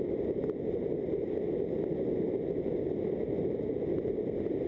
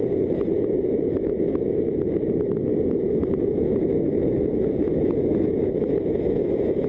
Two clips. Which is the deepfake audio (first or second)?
second